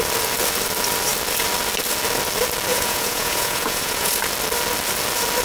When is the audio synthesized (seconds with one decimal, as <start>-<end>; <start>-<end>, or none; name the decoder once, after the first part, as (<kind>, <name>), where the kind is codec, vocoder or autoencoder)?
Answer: 2.7-4.1 (vocoder, Vocos)